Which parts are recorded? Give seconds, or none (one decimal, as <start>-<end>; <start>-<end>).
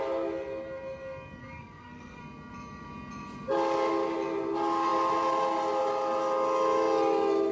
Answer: 0.0-1.4; 2.2-7.5